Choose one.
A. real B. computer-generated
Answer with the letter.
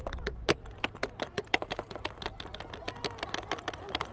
A